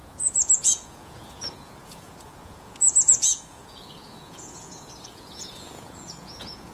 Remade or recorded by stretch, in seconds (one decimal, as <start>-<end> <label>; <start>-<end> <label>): 0.0-6.7 remade